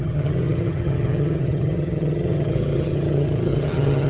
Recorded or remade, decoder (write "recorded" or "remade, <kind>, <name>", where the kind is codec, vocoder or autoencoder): remade, vocoder, HiFi-GAN